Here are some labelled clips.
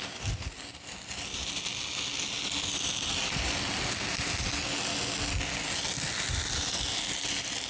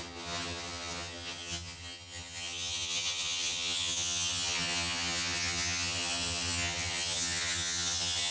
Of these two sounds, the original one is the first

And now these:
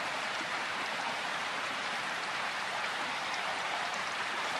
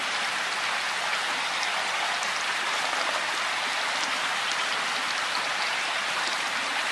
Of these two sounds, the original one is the second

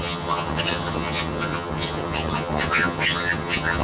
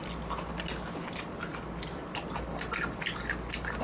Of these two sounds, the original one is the second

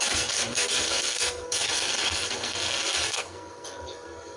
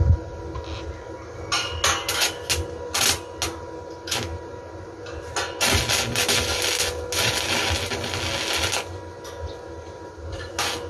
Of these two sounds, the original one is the second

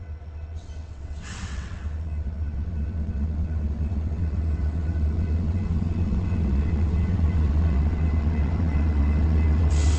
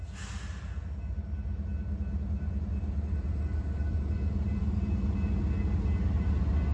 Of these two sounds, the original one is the second